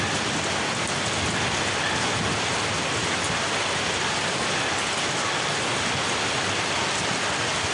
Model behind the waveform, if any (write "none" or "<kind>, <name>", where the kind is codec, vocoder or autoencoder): none